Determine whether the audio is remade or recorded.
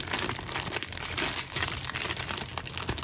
recorded